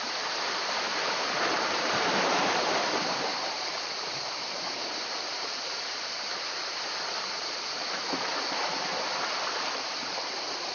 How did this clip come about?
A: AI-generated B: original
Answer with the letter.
A